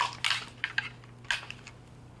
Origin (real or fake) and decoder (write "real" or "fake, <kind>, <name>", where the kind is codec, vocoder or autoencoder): real